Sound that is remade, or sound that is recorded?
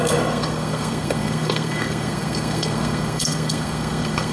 remade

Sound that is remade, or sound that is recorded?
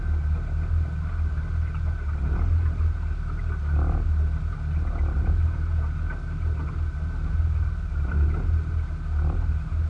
recorded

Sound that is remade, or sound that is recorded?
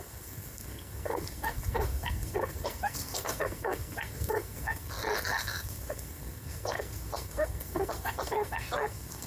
remade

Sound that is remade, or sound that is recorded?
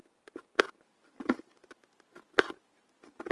recorded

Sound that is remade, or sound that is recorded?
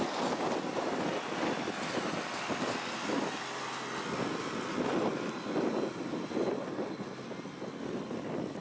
recorded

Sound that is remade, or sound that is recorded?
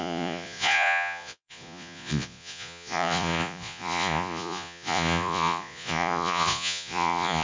remade